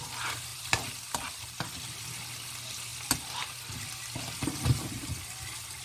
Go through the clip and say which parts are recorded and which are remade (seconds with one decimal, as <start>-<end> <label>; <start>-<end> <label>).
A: 0.0-0.5 recorded; 0.5-1.8 remade; 1.8-5.0 recorded; 5.0-5.8 remade